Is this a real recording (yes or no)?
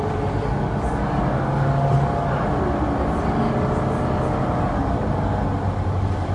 yes